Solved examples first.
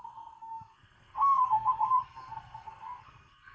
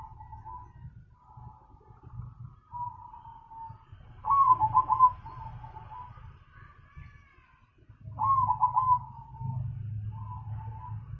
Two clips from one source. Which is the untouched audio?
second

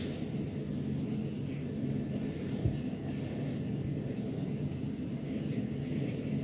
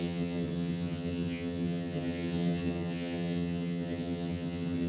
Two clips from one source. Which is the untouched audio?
first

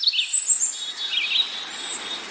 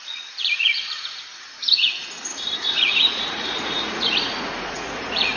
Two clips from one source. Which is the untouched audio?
first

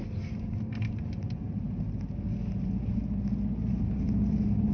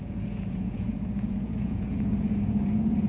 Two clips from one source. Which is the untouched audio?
first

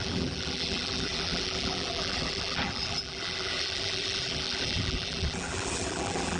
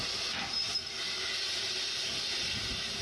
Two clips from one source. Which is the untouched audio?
second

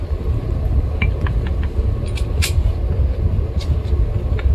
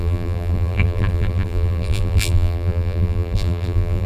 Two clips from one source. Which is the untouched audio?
first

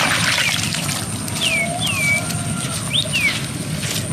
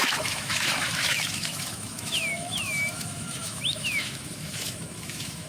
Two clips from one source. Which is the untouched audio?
first